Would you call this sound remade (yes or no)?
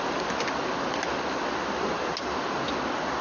no